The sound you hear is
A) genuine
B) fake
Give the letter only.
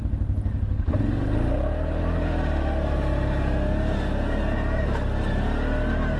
A